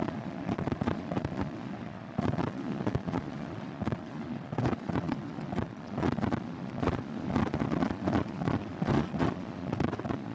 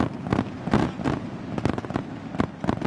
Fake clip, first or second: first